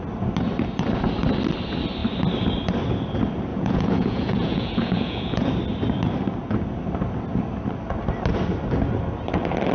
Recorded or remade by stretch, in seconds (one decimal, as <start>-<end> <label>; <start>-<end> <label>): 0.0-3.5 recorded; 3.5-5.5 remade; 5.5-9.7 recorded